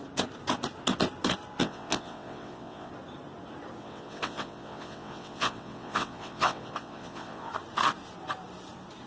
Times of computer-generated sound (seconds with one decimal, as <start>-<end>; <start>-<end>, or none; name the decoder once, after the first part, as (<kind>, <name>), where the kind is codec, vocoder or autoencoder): 1.6-2.9 (vocoder, WaveNeXt); 3.8-7.5